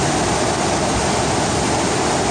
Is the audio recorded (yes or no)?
yes